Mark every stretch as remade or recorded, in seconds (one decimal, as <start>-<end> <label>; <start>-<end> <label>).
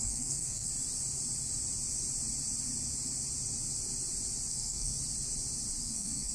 0.0-0.7 remade; 0.7-4.5 recorded; 4.5-4.9 remade; 4.9-5.8 recorded; 5.8-6.3 remade